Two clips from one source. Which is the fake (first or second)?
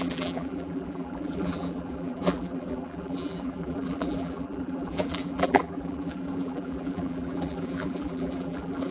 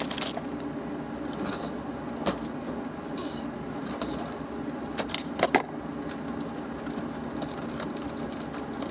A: first